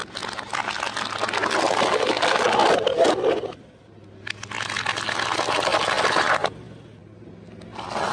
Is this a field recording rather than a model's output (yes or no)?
yes